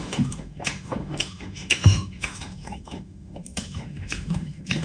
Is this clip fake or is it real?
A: fake